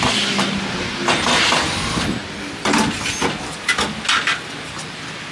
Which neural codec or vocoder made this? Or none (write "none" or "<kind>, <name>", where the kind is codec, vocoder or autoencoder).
none